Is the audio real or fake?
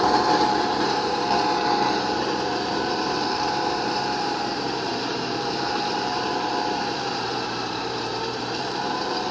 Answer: fake